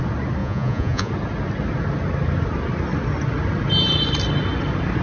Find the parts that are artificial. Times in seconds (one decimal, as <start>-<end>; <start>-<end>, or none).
0.4-1.1